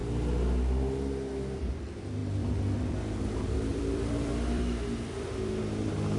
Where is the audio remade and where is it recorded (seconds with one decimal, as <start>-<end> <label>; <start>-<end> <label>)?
0.0-3.7 recorded; 3.7-5.6 remade; 5.6-6.2 recorded

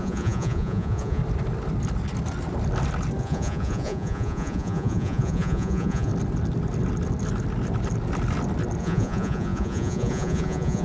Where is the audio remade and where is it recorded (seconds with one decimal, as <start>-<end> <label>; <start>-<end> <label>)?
0.0-1.2 remade; 1.2-3.2 recorded; 3.2-6.1 remade; 6.1-8.8 recorded; 8.8-10.8 remade

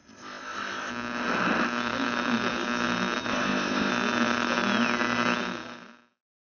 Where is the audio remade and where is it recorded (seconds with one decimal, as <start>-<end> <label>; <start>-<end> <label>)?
0.0-0.9 remade; 0.9-3.3 recorded; 3.3-3.9 remade; 3.9-6.4 recorded

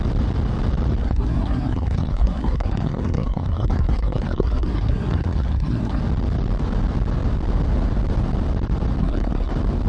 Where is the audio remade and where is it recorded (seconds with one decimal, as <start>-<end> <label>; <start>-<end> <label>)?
0.0-1.0 recorded; 1.0-6.0 remade; 6.0-9.0 recorded; 9.0-9.5 remade; 9.5-9.9 recorded

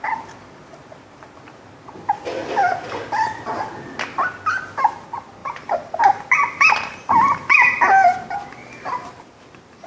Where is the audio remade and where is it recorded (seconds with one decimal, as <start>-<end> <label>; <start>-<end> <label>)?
0.0-5.4 recorded; 5.4-8.3 remade; 8.3-9.9 recorded

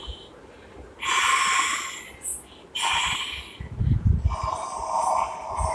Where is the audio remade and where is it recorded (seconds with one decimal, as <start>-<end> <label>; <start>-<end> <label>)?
0.0-5.7 recorded